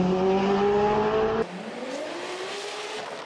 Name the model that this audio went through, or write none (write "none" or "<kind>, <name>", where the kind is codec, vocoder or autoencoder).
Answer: none